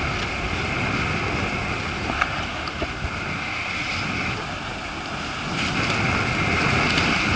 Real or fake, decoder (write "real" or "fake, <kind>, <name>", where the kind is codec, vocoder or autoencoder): real